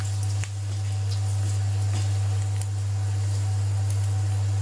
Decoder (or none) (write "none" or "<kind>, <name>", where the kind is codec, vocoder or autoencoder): none